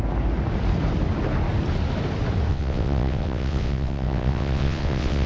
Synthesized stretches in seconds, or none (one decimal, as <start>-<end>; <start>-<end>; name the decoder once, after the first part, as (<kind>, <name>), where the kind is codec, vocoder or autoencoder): 2.5-5.3 (vocoder, WaveNeXt)